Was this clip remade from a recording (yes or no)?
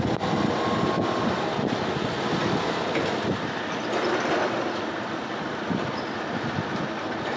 no